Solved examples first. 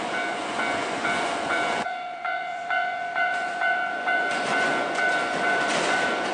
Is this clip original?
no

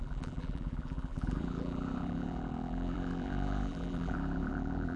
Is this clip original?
no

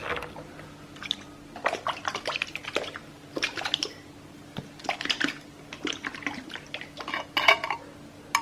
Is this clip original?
yes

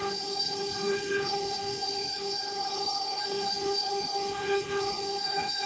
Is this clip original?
no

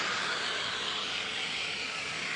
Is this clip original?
no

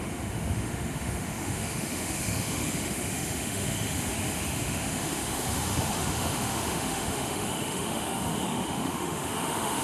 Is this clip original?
no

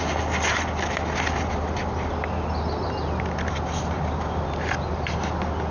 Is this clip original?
yes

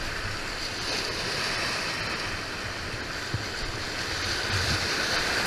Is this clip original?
yes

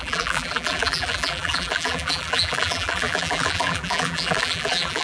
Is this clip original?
no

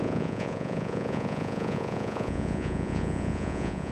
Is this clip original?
no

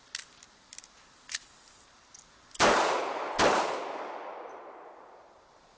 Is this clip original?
yes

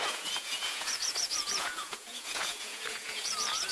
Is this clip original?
no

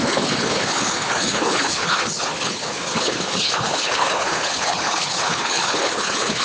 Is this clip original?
no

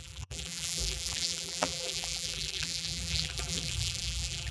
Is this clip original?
no